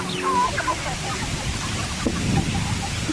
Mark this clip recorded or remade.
recorded